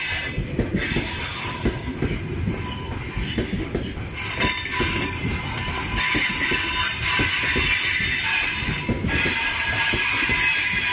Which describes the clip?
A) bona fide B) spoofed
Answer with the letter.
A